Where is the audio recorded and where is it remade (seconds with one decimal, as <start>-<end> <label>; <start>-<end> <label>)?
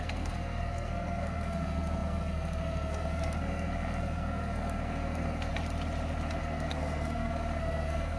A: 0.0-5.5 remade; 5.5-6.4 recorded; 6.4-8.2 remade